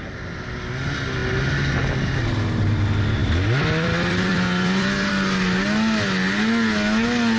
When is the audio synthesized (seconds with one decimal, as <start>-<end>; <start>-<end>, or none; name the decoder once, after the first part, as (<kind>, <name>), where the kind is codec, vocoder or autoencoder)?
3.2-5.1 (vocoder, BigVGAN v2)